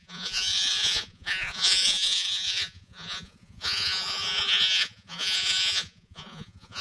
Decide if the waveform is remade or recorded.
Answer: remade